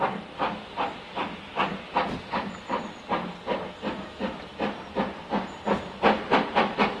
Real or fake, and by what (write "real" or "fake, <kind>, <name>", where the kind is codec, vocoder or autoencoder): real